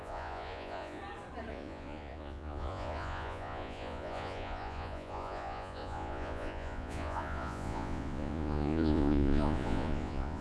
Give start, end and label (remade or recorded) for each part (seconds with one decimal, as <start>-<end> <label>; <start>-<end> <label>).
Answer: 0.0-1.0 remade; 1.0-1.5 recorded; 1.5-10.4 remade